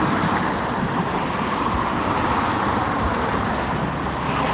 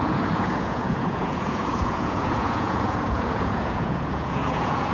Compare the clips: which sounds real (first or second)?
first